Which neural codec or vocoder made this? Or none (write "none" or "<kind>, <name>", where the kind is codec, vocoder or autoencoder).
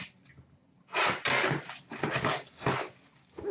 none